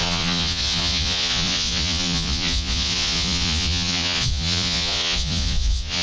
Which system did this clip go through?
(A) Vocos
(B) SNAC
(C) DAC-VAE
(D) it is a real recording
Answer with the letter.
A